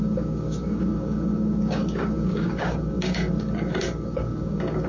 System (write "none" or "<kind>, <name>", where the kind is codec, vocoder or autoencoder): codec, DAC